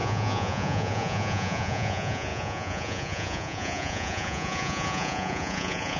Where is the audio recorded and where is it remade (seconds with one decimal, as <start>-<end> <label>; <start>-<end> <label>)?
0.0-6.0 remade